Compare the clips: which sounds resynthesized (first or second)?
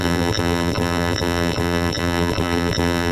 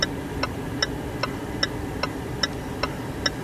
first